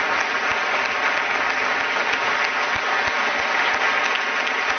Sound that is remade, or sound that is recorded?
recorded